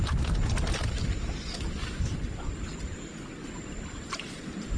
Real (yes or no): yes